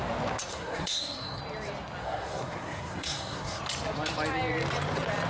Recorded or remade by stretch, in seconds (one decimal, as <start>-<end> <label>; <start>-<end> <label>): 0.0-0.5 recorded; 0.5-1.4 remade; 1.4-2.0 recorded; 2.0-3.6 remade; 3.6-5.3 recorded